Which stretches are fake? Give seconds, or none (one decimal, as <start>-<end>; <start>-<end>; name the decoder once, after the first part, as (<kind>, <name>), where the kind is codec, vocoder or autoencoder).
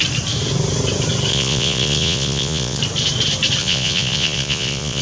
1.3-2.8 (vocoder, Vocos); 3.6-5.0